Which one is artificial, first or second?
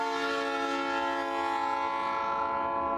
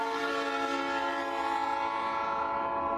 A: second